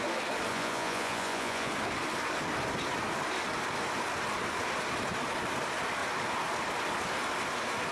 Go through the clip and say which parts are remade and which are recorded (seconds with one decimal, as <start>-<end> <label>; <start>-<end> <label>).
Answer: 0.0-0.5 recorded; 0.5-1.7 remade; 1.7-7.9 recorded